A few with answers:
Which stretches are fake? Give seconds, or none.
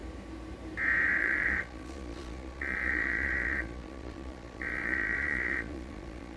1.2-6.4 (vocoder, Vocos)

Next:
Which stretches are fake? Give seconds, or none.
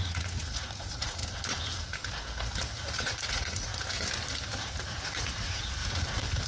0.0-1.2 (vocoder, Vocos); 2.8-3.7; 4.6-5.8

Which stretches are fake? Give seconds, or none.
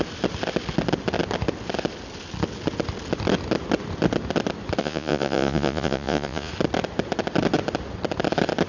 4.8-6.5 (vocoder, Vocos)